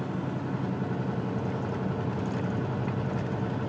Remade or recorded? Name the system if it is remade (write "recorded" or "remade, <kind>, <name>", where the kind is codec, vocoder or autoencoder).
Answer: recorded